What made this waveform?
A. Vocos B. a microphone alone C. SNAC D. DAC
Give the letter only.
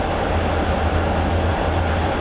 B